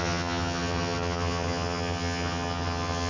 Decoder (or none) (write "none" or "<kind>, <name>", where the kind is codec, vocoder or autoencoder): vocoder, HiFi-GAN